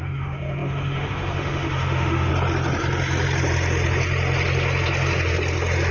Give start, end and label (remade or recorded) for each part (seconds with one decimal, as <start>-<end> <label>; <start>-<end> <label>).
0.0-2.3 remade; 2.3-5.9 recorded